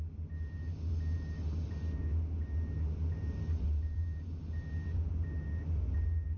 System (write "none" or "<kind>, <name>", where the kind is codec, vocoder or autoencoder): none